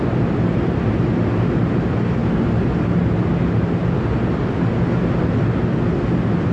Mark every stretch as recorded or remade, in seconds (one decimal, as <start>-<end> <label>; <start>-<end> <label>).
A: 0.0-6.5 recorded